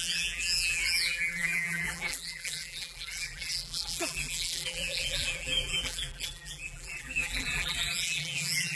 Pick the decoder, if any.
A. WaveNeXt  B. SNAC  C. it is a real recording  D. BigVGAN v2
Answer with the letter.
D